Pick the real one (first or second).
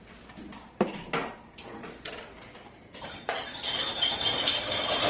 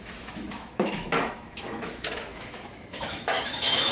first